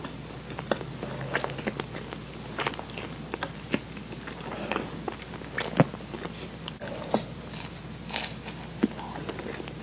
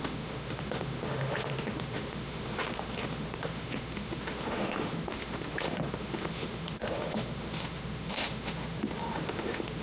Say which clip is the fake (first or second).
second